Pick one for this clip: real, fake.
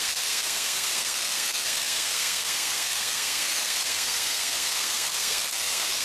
fake